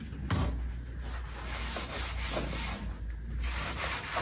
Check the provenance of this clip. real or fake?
real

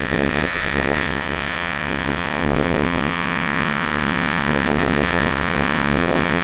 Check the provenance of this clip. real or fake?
fake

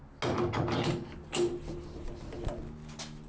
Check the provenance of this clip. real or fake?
real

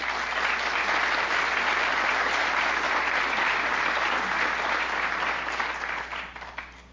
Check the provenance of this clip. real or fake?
real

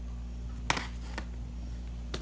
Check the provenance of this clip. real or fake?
real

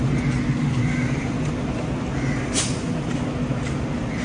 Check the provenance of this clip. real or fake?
real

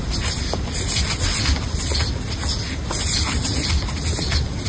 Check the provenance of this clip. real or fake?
real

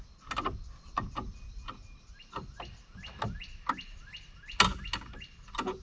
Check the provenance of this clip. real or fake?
real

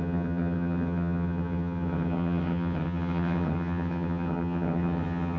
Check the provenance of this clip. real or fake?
fake